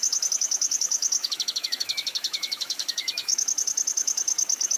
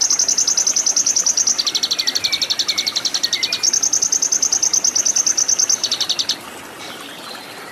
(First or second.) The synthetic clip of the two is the first